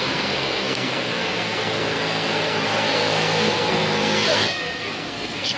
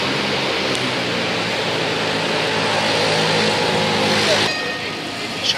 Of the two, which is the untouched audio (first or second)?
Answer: second